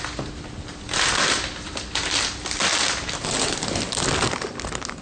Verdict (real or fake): real